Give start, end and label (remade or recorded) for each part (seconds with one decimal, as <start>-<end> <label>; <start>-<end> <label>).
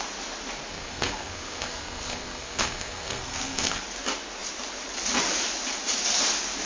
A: 0.0-0.7 recorded; 0.7-3.8 remade; 3.8-6.7 recorded